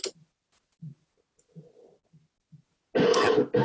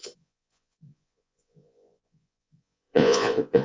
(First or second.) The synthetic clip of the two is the second